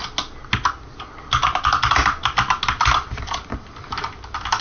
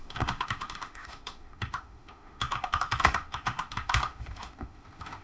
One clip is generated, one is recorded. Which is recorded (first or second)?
first